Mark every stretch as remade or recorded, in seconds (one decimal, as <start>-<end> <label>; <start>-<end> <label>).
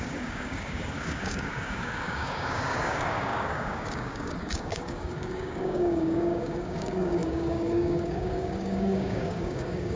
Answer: 0.0-10.0 remade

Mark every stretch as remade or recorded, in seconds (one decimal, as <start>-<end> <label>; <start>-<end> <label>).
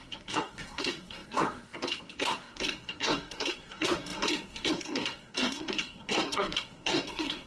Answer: 0.0-7.5 remade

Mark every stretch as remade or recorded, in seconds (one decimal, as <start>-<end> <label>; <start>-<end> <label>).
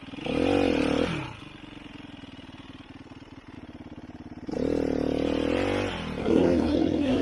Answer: 0.0-6.2 recorded; 6.2-7.2 remade